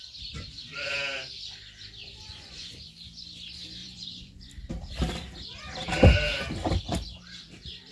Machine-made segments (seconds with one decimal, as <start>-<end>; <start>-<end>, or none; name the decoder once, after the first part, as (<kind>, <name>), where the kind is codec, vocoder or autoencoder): 2.0-2.9 (vocoder, Vocos); 3.8-4.4